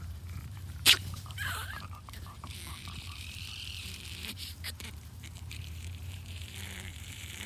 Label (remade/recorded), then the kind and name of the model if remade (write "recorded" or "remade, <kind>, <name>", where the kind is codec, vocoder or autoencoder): remade, vocoder, BigVGAN v2